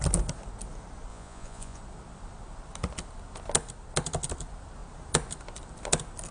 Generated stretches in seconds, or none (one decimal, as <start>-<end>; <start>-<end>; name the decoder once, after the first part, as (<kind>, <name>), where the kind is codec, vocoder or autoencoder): 1.1-1.8 (vocoder, Vocos)